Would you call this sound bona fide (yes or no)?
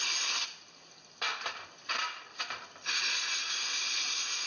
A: yes